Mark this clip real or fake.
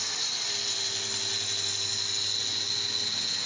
real